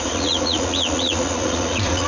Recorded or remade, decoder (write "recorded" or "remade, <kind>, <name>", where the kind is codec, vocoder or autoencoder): remade, vocoder, Vocos